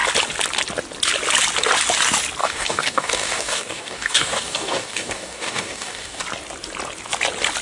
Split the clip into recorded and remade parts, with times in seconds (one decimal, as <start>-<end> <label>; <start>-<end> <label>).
0.0-2.4 recorded; 2.4-6.2 remade; 6.2-7.6 recorded